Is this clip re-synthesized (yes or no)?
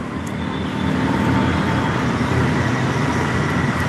no